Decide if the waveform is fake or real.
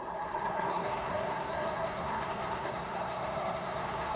fake